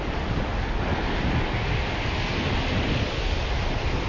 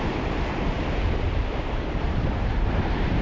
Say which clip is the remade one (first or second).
second